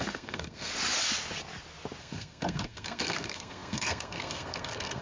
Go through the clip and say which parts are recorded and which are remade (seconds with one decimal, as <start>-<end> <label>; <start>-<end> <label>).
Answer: 0.0-0.7 remade; 0.7-2.0 recorded; 2.0-5.0 remade